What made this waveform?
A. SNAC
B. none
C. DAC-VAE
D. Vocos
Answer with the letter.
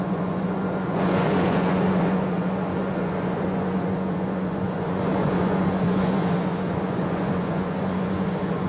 D